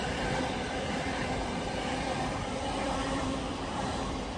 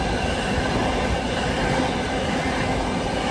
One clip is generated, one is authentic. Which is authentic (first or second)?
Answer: second